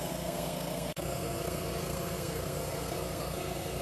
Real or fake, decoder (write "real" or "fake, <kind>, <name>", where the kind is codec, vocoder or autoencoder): fake, codec, SNAC